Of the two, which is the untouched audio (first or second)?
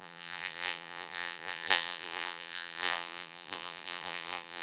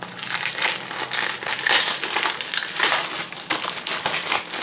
second